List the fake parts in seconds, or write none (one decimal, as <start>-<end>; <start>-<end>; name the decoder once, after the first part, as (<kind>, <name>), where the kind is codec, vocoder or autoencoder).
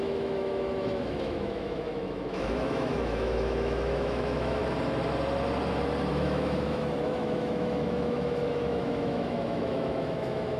0.0-4.6 (autoencoder, DAC-VAE); 6.1-10.6